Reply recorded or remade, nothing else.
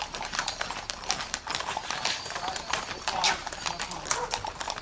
recorded